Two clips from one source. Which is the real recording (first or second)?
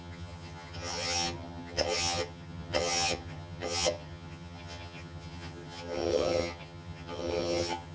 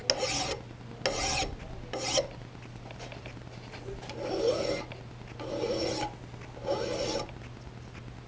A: second